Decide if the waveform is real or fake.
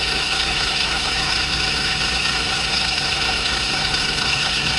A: fake